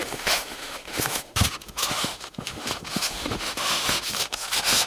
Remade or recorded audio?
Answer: remade